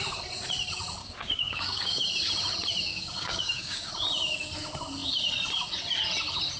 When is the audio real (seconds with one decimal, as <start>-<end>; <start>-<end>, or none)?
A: 0.0-1.0; 2.1-2.9; 3.9-6.6